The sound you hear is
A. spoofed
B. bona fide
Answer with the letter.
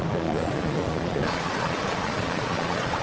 A